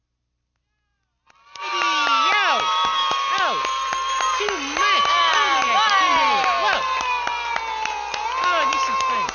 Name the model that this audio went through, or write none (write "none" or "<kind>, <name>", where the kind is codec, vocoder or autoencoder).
none